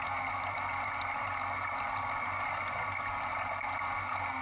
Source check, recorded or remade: recorded